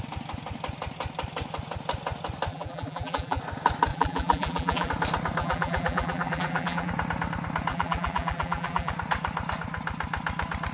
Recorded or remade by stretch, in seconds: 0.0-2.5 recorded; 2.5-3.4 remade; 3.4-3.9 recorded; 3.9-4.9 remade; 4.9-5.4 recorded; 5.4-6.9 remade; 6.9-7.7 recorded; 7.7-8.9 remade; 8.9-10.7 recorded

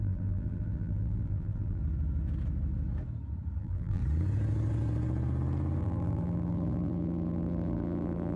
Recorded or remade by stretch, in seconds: 0.0-1.8 remade; 1.8-3.6 recorded; 3.6-4.0 remade; 4.0-5.8 recorded; 5.8-8.4 remade